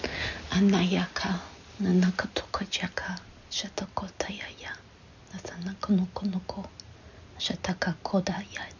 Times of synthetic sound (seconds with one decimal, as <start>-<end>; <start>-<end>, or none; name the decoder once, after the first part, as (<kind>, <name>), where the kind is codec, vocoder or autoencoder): none